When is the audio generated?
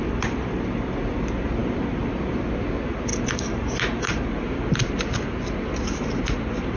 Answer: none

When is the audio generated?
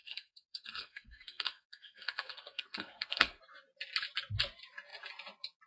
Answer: 0.0-3.4 (codec, SNAC)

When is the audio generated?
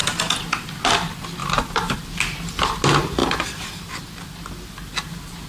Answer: 0.0-0.8 (vocoder, BigVGAN v2); 1.4-2.0; 3.2-3.7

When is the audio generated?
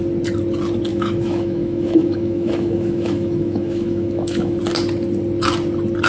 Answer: 0.9-4.6 (autoencoder, DAC-VAE)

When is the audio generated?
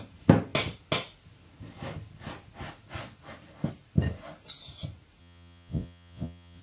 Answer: 5.2-6.6 (vocoder, Vocos)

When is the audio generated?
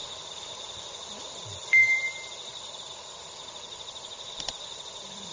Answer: 0.5-5.3 (vocoder, BigVGAN v2)